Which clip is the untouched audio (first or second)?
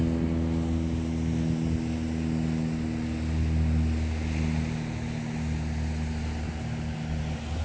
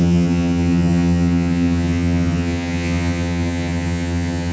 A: first